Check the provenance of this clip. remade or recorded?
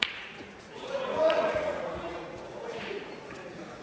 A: remade